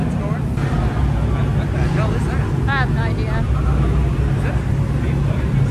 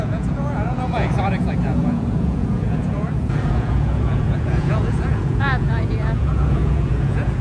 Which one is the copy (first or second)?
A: second